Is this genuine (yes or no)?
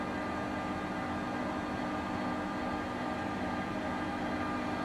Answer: yes